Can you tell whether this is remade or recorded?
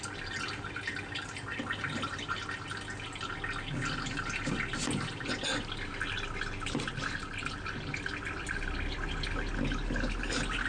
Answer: recorded